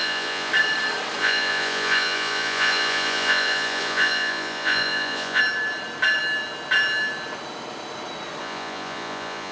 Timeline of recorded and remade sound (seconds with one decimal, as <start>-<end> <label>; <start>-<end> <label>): 0.0-0.5 remade; 0.5-1.2 recorded; 1.2-5.4 remade; 5.4-8.4 recorded; 8.4-9.5 remade